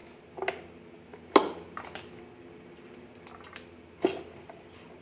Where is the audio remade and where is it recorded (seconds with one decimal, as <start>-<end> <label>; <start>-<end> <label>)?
0.0-5.0 recorded